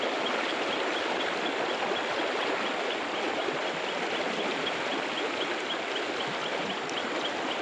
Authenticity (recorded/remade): recorded